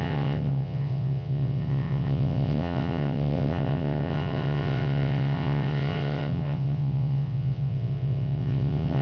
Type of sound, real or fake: fake